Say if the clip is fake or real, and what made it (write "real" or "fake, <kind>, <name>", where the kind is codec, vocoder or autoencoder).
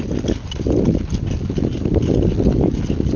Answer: real